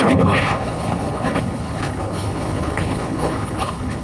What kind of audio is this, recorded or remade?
remade